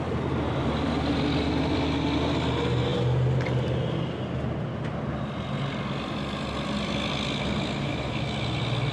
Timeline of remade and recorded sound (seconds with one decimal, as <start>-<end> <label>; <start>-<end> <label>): 0.0-8.9 recorded